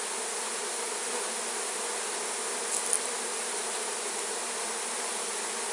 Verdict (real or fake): real